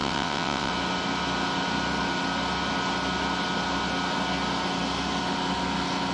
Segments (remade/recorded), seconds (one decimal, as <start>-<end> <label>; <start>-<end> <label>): 0.0-0.7 remade; 0.7-6.1 recorded